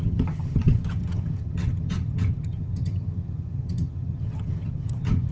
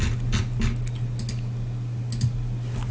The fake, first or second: first